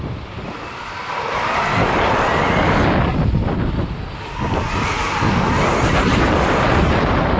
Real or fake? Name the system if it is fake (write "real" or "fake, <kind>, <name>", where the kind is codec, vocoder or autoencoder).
real